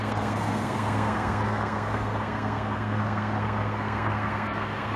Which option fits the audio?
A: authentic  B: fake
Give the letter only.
B